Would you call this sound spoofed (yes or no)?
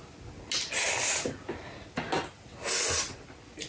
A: no